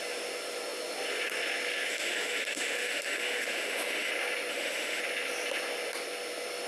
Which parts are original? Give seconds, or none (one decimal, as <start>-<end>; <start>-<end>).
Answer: 0.0-1.9; 4.1-4.5; 5.0-6.7